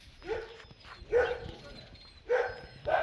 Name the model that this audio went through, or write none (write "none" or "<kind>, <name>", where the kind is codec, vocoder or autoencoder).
vocoder, BigVGAN v2